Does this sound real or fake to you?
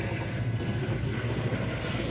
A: fake